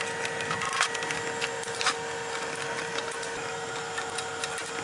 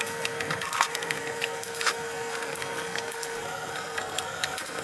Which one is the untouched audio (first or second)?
first